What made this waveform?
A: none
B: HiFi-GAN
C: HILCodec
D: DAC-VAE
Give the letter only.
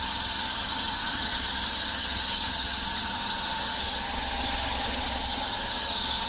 B